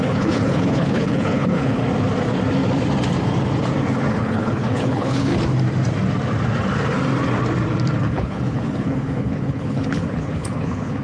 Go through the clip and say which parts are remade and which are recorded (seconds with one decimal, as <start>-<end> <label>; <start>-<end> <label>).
0.0-1.8 remade; 1.8-4.1 recorded; 4.1-5.3 remade; 5.3-8.0 recorded; 8.0-11.0 remade